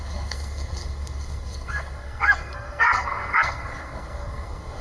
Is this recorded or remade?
remade